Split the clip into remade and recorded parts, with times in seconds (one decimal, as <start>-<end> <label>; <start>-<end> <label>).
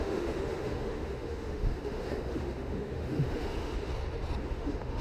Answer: 0.0-3.9 remade; 3.9-4.4 recorded; 4.4-5.0 remade